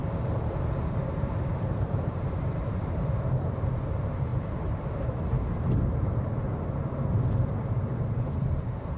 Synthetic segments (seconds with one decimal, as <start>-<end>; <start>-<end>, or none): 0.0-9.0